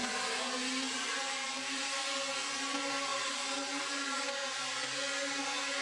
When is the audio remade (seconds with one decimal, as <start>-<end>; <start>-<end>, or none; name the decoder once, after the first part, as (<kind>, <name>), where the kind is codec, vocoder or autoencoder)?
0.9-2.0 (vocoder, BigVGAN v2); 2.6-5.8